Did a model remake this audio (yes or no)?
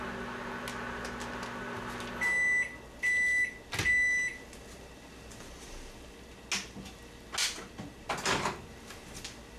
no